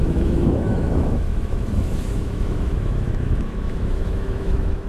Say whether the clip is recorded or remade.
remade